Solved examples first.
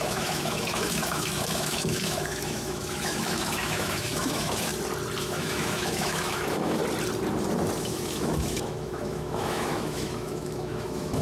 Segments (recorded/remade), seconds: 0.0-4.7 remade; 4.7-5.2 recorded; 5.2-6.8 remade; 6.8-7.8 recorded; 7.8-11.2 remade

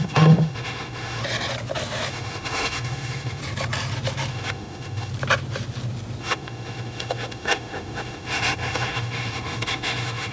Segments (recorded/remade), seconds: 0.0-1.2 remade; 1.2-2.1 recorded; 2.1-3.4 remade; 3.4-4.3 recorded; 4.3-5.1 remade; 5.1-6.2 recorded; 6.2-10.3 remade

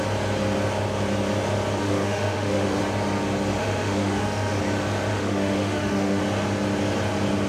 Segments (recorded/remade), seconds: 0.0-1.8 recorded; 1.8-2.8 remade; 2.8-3.6 recorded; 3.6-4.6 remade; 4.6-5.1 recorded; 5.1-6.2 remade; 6.2-7.5 recorded

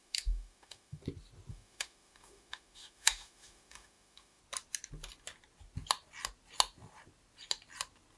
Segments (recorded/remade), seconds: 0.0-1.0 remade; 1.0-1.5 recorded; 1.5-4.4 remade; 4.4-8.2 recorded

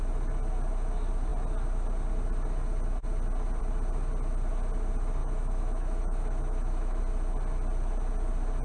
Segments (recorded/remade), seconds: 0.0-5.2 recorded; 5.2-7.0 remade; 7.0-8.6 recorded

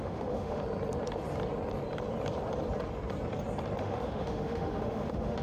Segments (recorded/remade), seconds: 0.0-0.6 remade; 0.6-3.8 recorded; 3.8-5.4 remade